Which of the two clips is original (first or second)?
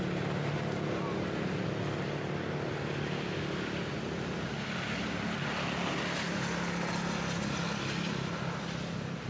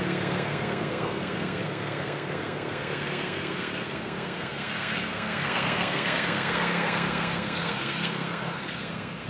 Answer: first